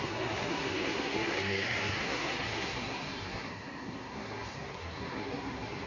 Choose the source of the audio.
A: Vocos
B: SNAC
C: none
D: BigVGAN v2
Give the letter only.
B